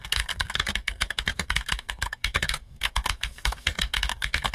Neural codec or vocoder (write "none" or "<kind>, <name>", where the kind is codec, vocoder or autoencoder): codec, SNAC